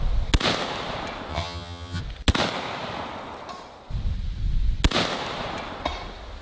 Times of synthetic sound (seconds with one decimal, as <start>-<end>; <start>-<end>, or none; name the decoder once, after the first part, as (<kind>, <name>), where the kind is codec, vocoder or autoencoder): 1.3-2.0 (vocoder, HiFi-GAN)